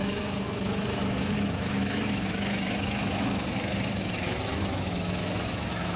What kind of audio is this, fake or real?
fake